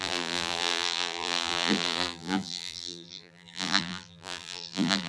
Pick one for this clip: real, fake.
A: fake